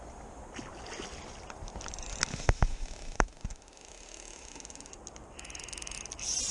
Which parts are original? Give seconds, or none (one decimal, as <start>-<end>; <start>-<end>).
0.0-2.3; 4.9-6.5